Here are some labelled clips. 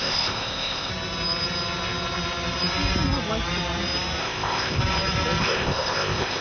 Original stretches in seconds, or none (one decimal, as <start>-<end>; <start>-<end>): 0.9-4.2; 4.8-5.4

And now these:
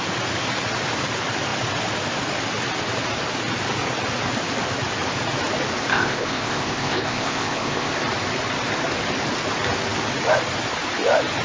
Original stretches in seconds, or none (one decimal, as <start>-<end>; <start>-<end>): 0.0-5.9; 7.9-11.4

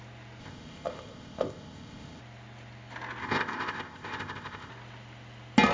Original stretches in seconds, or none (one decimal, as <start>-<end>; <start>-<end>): 0.0-0.4; 2.2-3.2; 4.7-5.7

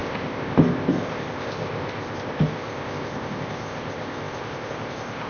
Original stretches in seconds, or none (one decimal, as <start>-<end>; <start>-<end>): none

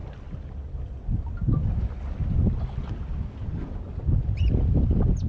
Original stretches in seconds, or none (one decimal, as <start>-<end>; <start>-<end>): 0.0-5.3

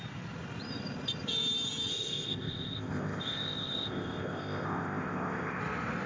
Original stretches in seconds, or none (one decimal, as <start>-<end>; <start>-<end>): 0.0-1.9; 5.6-6.1